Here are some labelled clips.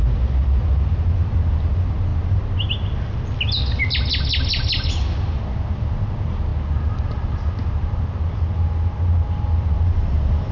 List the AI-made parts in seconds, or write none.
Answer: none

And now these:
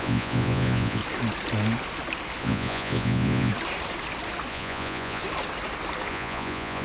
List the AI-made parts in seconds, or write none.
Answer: 0.0-1.0 (vocoder, Vocos); 2.4-3.5; 4.5-5.2; 6.1-6.8

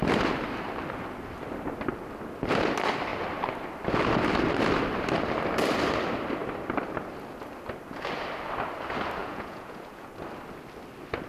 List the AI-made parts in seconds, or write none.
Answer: 9.2-10.1 (vocoder, Vocos)

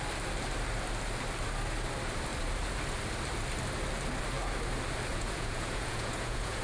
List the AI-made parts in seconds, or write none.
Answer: 5.1-6.6 (vocoder, Vocos)

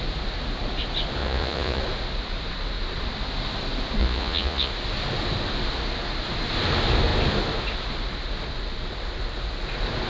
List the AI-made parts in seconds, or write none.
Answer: 1.2-1.8 (vocoder, Vocos); 4.0-4.7